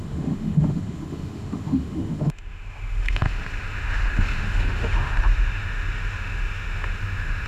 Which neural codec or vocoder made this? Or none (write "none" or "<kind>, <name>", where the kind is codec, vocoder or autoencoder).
autoencoder, DAC-VAE